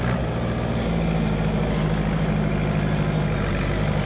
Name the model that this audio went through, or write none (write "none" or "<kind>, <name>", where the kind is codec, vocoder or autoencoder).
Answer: none